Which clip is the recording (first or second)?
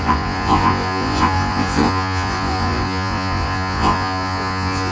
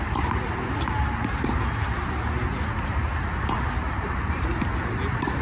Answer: second